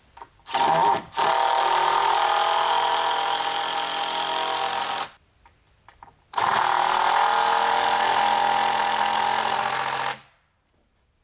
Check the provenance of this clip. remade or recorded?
recorded